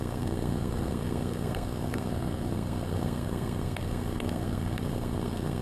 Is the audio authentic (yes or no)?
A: no